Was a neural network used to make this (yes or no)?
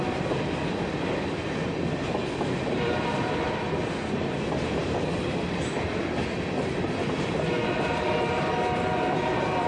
yes